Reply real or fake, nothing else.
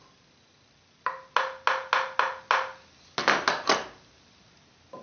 real